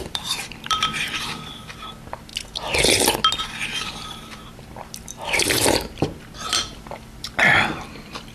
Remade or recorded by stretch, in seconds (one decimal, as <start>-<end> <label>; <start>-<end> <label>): 0.0-2.3 remade; 2.3-3.4 recorded; 3.4-8.3 remade